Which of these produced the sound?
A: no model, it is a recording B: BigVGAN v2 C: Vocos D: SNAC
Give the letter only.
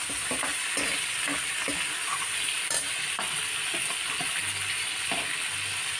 A